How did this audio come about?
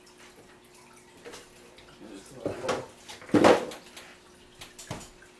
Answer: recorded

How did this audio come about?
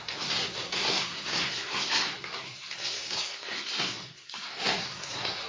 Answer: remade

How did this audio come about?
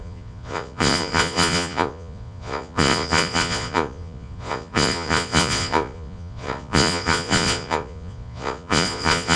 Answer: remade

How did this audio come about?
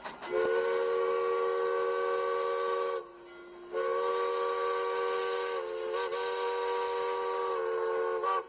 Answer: recorded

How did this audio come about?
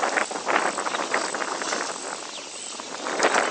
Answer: recorded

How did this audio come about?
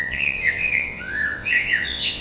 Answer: remade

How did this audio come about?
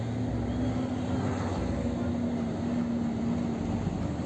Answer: recorded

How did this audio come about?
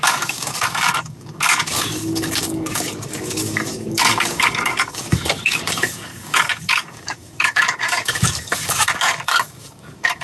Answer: remade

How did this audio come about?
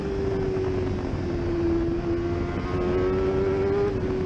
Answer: recorded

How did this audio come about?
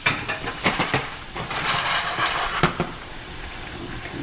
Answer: remade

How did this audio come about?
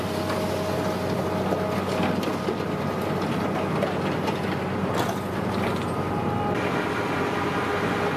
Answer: recorded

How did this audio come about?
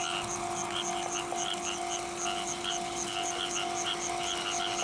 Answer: recorded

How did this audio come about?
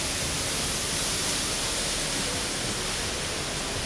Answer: recorded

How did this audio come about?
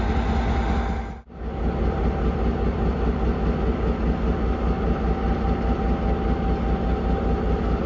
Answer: recorded